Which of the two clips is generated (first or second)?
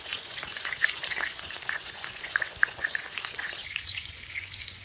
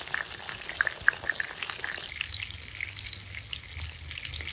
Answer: first